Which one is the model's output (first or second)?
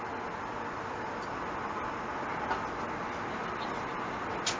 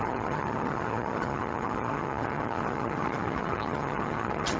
second